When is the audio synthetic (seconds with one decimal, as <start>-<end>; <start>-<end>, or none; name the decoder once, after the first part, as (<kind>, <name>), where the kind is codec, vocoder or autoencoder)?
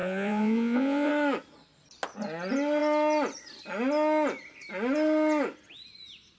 0.0-1.1 (vocoder, Vocos)